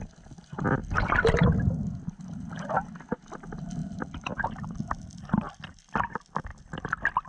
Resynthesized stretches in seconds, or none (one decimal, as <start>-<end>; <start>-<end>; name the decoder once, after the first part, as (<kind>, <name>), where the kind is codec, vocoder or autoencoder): 0.8-2.7 (vocoder, BigVGAN v2); 3.8-5.2; 6.5-7.3

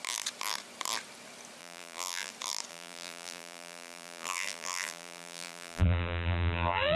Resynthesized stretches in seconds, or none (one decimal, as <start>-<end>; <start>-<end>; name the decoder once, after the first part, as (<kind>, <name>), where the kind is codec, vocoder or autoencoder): 1.6-2.3 (vocoder, BigVGAN v2); 2.7-7.0

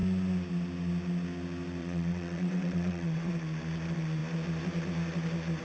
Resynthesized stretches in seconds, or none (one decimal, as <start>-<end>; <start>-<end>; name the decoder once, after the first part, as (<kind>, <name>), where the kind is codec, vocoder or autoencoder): 1.8-3.3 (vocoder, WaveNeXt)

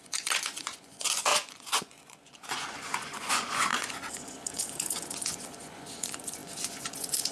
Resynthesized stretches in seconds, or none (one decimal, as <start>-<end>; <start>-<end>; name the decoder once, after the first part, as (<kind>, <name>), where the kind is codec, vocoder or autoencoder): 0.0-7.3 (vocoder, Vocos)

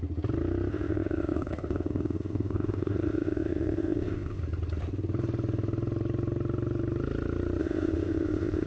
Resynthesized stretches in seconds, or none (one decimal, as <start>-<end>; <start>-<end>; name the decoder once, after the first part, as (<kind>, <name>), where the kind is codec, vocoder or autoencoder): 0.7-4.4 (codec, ZipCodec); 7.6-8.7

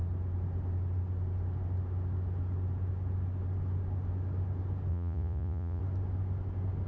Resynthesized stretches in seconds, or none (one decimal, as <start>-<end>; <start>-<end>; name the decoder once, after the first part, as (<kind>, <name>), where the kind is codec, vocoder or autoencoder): 4.9-5.8 (vocoder, Vocos)

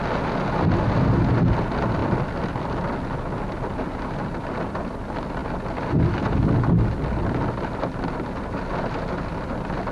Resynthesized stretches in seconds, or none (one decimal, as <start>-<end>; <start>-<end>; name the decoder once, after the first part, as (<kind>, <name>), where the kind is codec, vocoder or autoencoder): none